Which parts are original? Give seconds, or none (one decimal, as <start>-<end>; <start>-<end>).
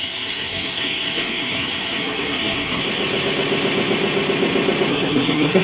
2.8-4.9